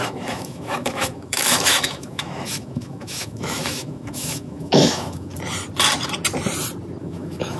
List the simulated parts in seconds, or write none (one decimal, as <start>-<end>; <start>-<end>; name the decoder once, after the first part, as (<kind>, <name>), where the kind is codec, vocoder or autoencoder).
0.0-5.3 (autoencoder, DAC-VAE); 7.0-7.6